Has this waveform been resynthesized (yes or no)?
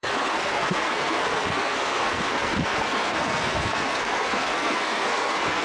yes